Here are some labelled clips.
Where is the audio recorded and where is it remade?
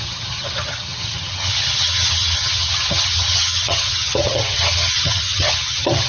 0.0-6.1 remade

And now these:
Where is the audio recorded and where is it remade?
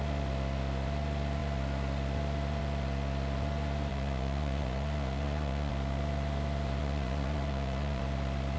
0.0-3.9 recorded; 3.9-5.7 remade; 5.7-6.8 recorded; 6.8-8.0 remade; 8.0-8.6 recorded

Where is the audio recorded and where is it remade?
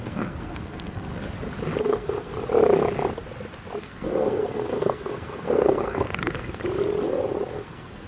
0.0-1.1 remade; 1.1-1.8 recorded; 1.8-2.3 remade; 2.3-3.8 recorded; 3.8-6.6 remade; 6.6-7.5 recorded; 7.5-8.1 remade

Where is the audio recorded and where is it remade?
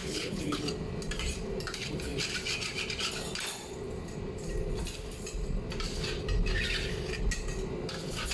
0.0-0.6 remade; 0.6-8.3 recorded